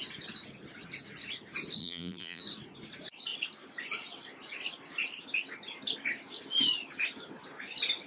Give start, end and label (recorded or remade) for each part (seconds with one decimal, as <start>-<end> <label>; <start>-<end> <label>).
0.0-1.8 recorded; 1.8-2.4 remade; 2.4-8.1 recorded